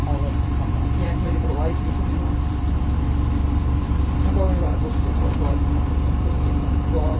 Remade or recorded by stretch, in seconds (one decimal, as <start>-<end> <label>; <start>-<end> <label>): 0.0-7.2 remade